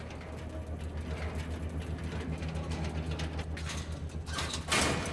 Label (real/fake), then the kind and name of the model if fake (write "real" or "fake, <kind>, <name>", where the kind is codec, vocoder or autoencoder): real